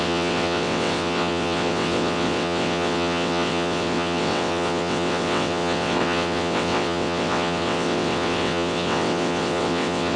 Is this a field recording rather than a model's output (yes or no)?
no